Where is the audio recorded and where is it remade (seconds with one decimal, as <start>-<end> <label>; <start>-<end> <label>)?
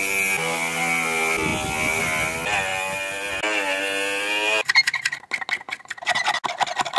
0.0-7.0 recorded